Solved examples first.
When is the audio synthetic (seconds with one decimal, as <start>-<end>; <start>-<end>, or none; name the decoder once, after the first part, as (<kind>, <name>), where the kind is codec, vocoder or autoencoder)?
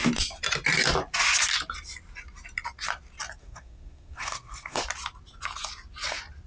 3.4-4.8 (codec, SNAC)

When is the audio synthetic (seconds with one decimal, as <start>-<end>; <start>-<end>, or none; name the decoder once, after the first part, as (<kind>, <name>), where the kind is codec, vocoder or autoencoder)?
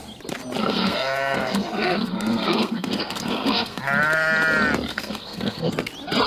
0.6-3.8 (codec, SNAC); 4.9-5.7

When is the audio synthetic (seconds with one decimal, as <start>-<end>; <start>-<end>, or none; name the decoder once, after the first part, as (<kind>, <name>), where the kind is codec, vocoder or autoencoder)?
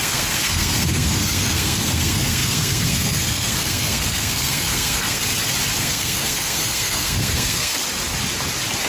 0.0-5.2 (codec, SNAC); 5.8-7.7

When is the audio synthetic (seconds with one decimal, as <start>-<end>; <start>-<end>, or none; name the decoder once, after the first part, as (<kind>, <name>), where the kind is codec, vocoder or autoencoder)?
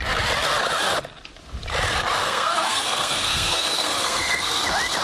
2.2-4.6 (codec, SNAC)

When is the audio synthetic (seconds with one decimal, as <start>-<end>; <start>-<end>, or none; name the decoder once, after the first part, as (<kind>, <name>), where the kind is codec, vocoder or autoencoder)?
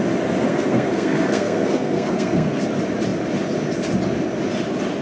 0.5-2.6 (codec, SNAC)